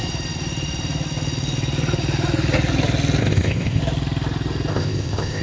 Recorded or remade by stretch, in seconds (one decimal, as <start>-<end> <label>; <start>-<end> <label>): 0.0-3.2 recorded; 3.2-3.8 remade; 3.8-4.7 recorded; 4.7-5.4 remade